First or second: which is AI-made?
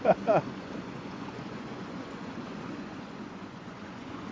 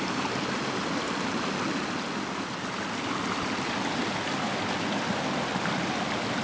first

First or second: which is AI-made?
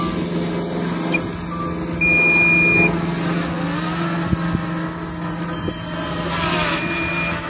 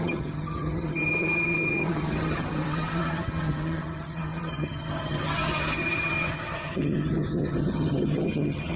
second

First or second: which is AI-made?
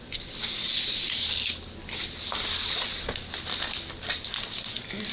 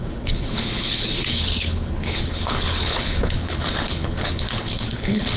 second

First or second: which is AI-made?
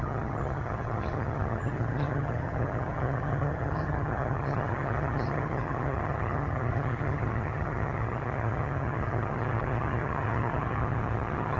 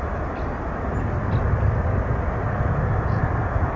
first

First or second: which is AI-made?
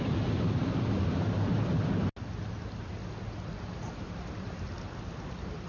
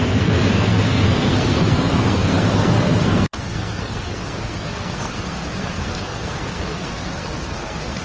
second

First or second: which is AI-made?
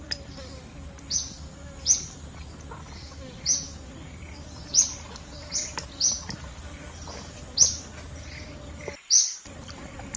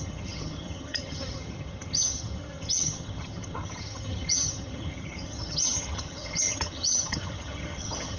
second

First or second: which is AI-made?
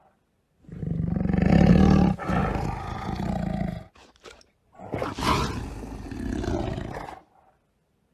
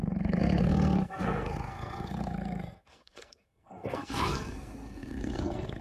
second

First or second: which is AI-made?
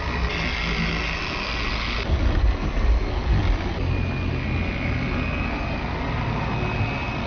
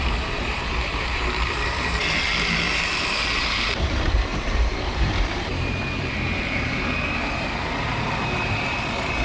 second